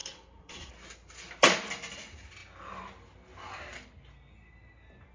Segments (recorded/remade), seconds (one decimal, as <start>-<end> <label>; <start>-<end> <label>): 0.0-0.7 remade; 0.7-5.1 recorded